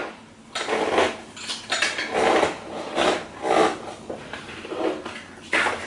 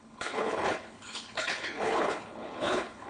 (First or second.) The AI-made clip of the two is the second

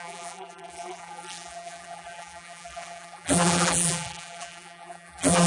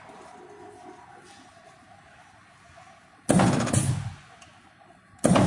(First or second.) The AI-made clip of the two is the first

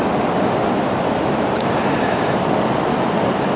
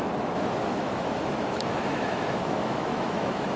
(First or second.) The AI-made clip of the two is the second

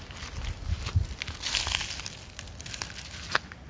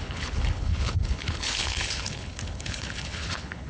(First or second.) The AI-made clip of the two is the second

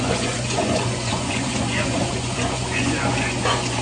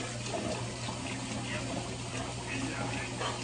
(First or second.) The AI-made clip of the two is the first